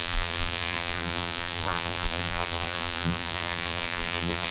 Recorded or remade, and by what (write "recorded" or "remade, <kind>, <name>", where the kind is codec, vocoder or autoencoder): remade, vocoder, BigVGAN v2